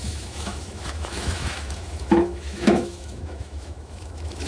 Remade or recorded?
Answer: remade